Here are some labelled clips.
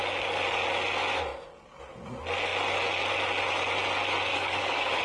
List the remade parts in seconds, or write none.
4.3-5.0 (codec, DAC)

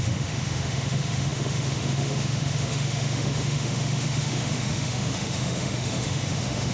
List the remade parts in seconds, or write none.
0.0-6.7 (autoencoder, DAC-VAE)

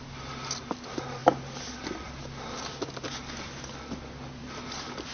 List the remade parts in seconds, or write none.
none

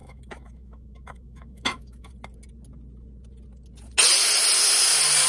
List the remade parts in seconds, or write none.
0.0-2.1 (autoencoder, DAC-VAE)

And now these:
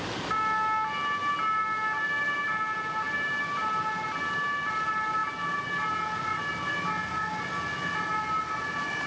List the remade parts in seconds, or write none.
none

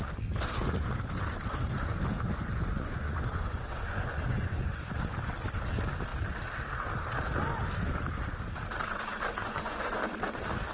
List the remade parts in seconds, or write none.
2.7-4.9 (vocoder, Vocos); 9.4-10.0